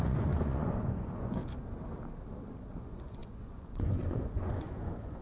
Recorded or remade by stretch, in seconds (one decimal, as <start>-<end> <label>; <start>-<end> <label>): 0.0-1.4 remade; 1.4-2.8 recorded; 2.8-5.2 remade